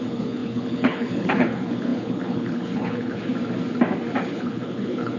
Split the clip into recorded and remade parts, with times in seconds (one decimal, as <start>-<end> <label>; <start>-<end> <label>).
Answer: 0.0-3.3 remade; 3.3-4.2 recorded; 4.2-5.2 remade